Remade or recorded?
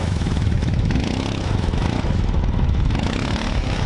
remade